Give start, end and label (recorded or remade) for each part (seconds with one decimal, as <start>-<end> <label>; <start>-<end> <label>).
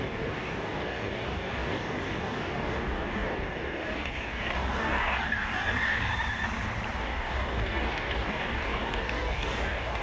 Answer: 0.0-6.1 remade; 6.1-7.0 recorded; 7.0-10.0 remade